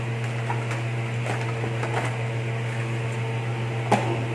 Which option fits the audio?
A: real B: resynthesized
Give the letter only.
A